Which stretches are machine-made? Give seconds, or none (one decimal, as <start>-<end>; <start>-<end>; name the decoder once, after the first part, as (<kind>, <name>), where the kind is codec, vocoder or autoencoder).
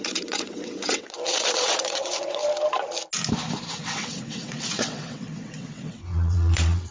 0.0-2.4 (vocoder, WaveNeXt); 3.7-6.9